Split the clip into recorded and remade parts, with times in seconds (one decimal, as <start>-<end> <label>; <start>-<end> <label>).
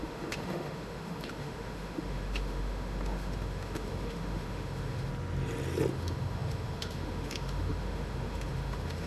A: 0.0-5.1 remade; 5.1-5.9 recorded; 5.9-9.1 remade